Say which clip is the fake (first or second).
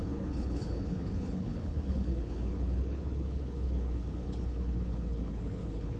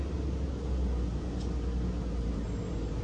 first